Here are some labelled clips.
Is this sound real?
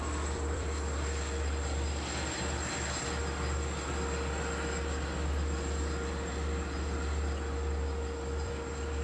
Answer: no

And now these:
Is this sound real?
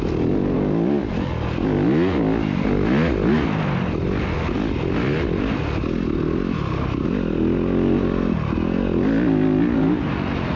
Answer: yes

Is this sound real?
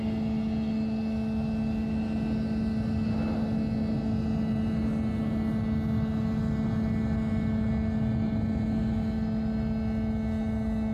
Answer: yes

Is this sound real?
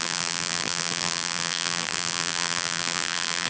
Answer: no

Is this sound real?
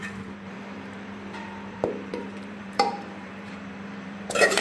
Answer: no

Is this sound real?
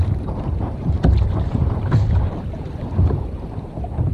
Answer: no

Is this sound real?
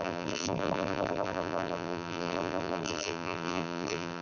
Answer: no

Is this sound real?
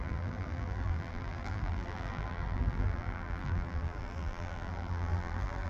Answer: no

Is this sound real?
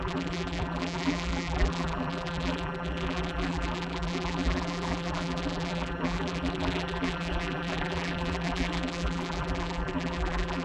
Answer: no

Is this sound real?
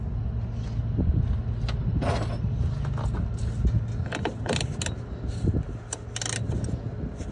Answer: yes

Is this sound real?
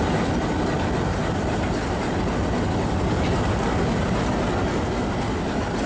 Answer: yes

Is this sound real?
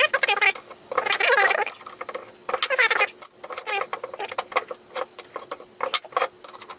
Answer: yes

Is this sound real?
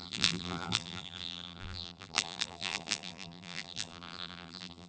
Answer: no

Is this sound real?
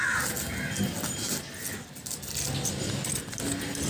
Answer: yes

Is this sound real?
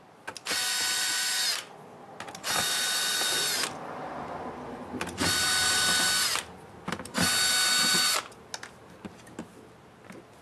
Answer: yes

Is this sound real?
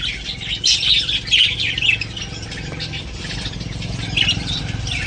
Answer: yes